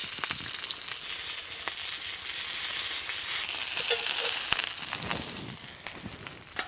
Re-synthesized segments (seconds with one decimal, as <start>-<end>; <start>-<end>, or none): 5.1-5.6